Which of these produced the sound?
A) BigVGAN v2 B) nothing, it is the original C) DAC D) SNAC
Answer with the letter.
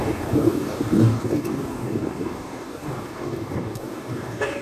C